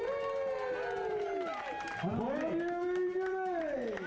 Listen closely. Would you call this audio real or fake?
real